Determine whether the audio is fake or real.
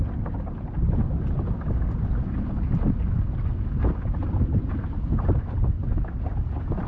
real